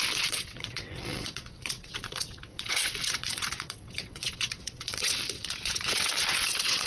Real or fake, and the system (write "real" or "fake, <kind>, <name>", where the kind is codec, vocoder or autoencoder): fake, vocoder, WaveNeXt